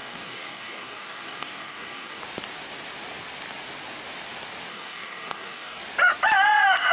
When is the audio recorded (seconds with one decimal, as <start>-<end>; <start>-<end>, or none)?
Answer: 2.2-4.7; 5.8-6.9